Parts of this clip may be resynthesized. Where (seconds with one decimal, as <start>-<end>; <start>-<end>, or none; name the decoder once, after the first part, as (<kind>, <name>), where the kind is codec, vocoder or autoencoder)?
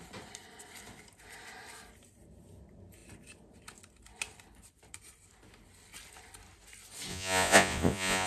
7.1-8.3 (vocoder, Vocos)